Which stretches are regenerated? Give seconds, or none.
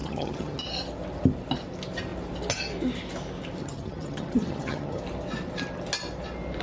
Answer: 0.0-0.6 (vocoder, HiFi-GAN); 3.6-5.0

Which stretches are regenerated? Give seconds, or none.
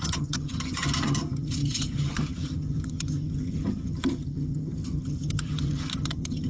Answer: 0.0-6.5 (vocoder, HiFi-GAN)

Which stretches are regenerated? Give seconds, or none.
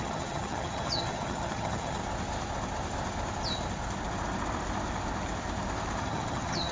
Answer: 0.0-2.0 (vocoder, HiFi-GAN); 6.0-6.7